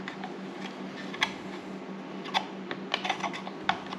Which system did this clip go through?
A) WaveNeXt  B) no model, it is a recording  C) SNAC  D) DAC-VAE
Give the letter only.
B